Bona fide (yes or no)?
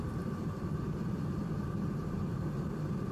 no